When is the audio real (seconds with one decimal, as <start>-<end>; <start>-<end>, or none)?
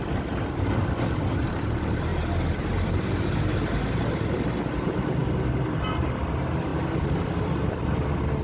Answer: 0.0-8.4